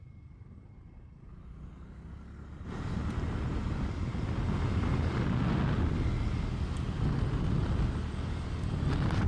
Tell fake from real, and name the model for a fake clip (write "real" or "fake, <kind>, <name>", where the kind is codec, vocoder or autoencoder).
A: real